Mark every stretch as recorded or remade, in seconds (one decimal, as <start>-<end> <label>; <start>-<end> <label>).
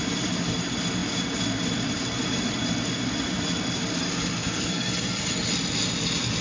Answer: 0.0-4.4 recorded; 4.4-4.9 remade; 4.9-6.4 recorded